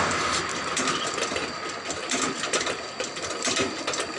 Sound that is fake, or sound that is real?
real